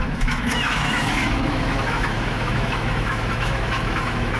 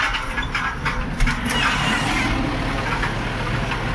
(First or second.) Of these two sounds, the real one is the second